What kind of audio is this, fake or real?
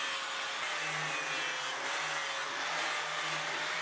real